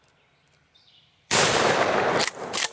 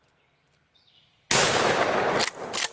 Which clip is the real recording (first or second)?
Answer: second